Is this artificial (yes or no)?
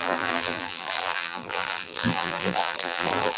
yes